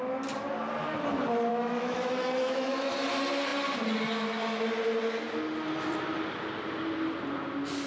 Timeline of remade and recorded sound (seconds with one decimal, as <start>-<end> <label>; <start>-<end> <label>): 0.0-1.5 recorded; 1.5-2.9 remade; 2.9-7.9 recorded